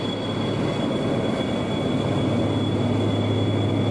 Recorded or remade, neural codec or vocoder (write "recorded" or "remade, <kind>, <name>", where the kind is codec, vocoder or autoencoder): recorded